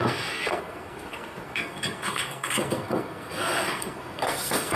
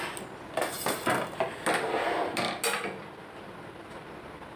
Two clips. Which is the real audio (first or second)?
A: second